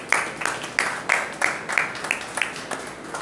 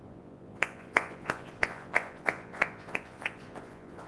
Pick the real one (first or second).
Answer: first